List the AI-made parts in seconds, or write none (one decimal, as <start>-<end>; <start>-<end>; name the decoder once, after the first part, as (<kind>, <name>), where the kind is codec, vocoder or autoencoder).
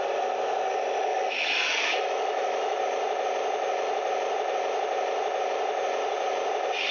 1.1-2.8 (autoencoder, DAC-VAE)